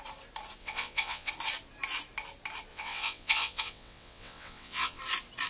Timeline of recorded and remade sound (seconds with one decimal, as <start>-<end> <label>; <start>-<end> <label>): 0.0-0.6 recorded; 0.6-1.3 remade; 1.3-2.7 recorded; 2.7-5.0 remade; 5.0-5.5 recorded